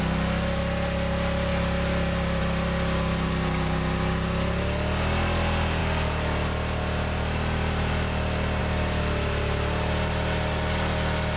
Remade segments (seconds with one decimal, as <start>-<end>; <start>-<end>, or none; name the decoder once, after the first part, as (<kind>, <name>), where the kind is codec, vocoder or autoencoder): none